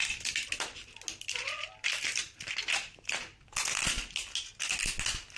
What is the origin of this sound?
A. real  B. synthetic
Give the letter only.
A